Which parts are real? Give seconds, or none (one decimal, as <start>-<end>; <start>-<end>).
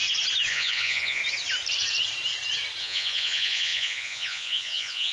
0.0-0.5; 1.2-2.8